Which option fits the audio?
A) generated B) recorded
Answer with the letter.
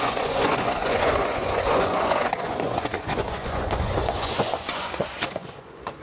A